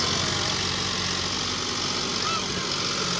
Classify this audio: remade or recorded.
recorded